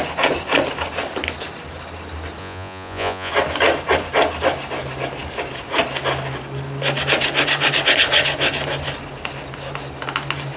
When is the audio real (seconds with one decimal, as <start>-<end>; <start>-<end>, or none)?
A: 0.0-2.4; 3.3-10.6